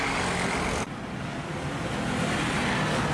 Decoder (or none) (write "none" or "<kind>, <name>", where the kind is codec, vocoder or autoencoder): none